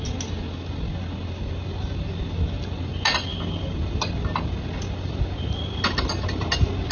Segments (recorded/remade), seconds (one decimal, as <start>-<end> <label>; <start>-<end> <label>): 0.0-6.9 recorded